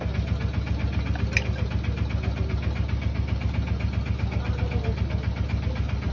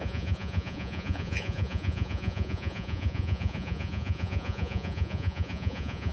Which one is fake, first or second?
second